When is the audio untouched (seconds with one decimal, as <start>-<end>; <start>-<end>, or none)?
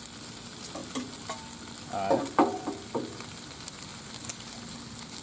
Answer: 0.0-5.2